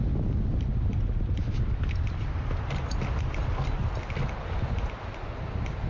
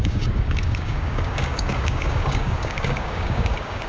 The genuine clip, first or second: first